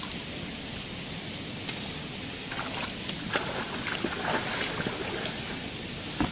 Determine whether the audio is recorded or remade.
recorded